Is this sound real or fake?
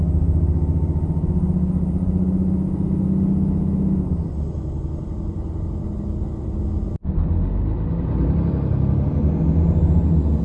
real